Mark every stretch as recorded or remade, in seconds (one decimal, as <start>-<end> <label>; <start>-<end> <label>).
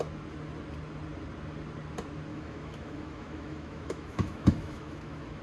0.0-2.3 recorded; 2.3-5.4 remade